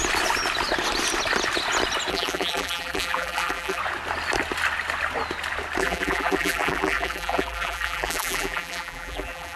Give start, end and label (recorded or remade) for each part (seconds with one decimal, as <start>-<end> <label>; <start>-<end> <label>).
0.0-2.1 recorded; 2.1-3.8 remade; 3.8-5.8 recorded; 5.8-9.6 remade